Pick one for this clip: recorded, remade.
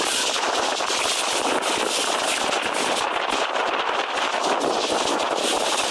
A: remade